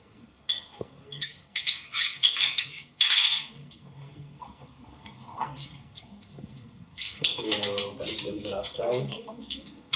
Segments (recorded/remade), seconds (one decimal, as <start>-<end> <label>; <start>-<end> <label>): 0.0-7.8 remade; 7.8-8.3 recorded; 8.3-10.0 remade